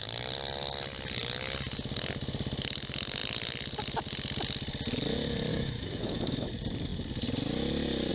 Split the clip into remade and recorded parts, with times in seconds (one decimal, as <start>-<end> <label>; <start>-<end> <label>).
0.0-5.5 recorded; 5.5-6.5 remade; 6.5-8.1 recorded